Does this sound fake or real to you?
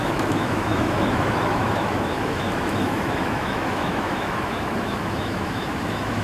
fake